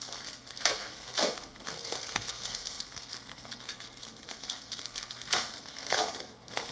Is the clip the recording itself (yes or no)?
no